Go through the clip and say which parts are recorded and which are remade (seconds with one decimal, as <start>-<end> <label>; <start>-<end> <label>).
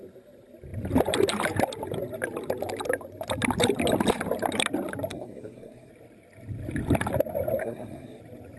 0.0-5.1 recorded; 5.1-5.9 remade; 5.9-7.6 recorded; 7.6-8.2 remade; 8.2-8.6 recorded